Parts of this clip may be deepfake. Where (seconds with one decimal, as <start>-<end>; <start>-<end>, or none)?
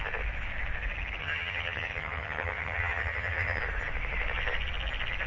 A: 1.2-3.6